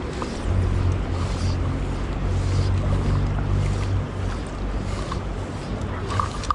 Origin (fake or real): real